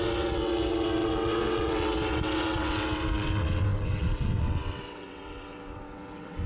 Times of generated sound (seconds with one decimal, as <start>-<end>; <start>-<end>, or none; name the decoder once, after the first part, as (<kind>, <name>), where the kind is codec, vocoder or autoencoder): 0.0-6.5 (vocoder, WaveNeXt)

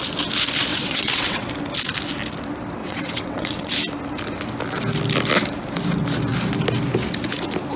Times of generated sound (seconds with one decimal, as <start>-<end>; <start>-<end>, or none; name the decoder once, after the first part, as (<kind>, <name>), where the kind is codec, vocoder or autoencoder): 0.7-1.5 (vocoder, WaveNeXt); 2.8-3.7

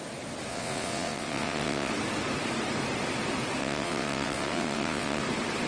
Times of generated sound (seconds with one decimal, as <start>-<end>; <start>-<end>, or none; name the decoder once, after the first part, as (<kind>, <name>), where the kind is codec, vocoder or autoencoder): 0.5-1.9 (vocoder, WaveNeXt); 3.6-5.2

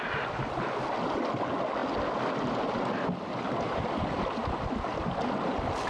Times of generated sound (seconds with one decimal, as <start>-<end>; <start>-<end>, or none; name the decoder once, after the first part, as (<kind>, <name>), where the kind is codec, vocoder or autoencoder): none

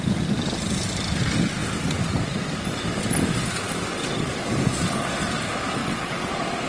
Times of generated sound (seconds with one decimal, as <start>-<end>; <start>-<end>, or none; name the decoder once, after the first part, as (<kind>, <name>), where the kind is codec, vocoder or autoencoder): 5.8-6.3 (vocoder, WaveNeXt)

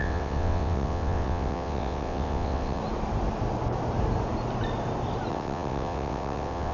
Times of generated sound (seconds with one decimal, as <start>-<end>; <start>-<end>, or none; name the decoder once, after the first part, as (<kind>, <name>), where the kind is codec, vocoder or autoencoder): 0.0-2.8 (vocoder, WaveNeXt); 5.3-6.7